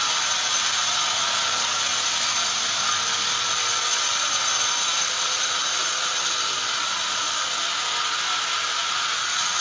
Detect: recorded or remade recorded